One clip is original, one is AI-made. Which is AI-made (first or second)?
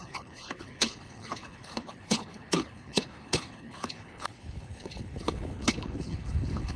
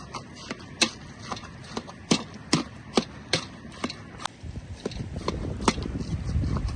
first